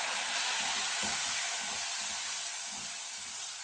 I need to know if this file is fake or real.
real